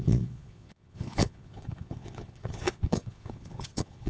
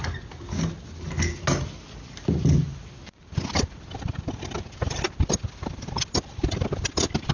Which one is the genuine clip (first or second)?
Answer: second